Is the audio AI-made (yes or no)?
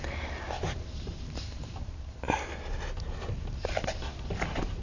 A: no